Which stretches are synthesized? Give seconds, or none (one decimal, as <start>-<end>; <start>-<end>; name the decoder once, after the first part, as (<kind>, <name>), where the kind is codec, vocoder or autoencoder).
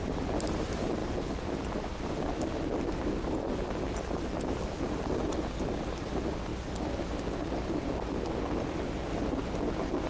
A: none